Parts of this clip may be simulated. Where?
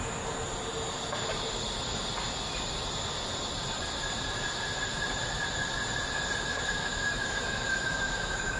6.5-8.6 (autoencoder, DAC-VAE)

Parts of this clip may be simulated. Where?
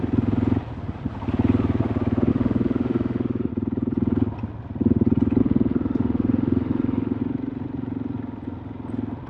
2.3-3.5 (autoencoder, DAC-VAE); 5.4-7.2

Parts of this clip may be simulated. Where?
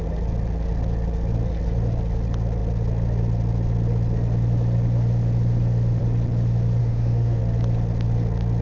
6.8-7.4 (autoencoder, DAC-VAE)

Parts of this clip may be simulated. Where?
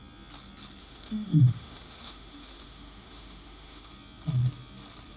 0.8-3.9 (autoencoder, DAC-VAE)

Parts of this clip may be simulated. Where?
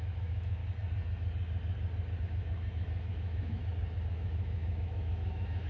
0.0-0.6 (autoencoder, DAC-VAE); 2.2-3.6; 4.1-5.7